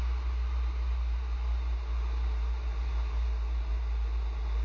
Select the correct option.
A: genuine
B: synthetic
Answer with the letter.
A